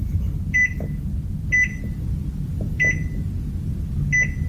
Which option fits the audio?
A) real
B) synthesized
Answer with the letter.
A